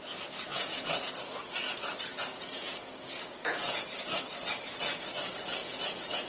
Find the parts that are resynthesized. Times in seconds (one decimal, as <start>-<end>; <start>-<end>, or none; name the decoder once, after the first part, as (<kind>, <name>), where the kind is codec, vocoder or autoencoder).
0.5-1.1 (vocoder, Vocos); 2.1-4.0; 5.6-6.3